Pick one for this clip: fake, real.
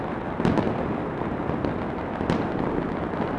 real